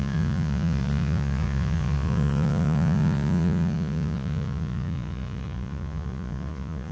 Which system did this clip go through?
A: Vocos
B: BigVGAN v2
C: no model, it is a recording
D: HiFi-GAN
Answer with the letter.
A